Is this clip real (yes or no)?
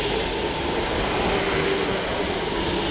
yes